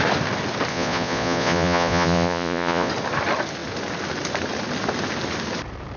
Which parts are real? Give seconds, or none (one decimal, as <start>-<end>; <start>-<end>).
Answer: 0.0-0.7; 2.9-6.0